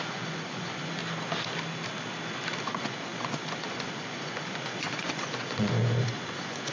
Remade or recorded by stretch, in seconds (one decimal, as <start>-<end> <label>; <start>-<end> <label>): 0.0-1.0 remade; 1.0-2.6 recorded; 2.6-6.7 remade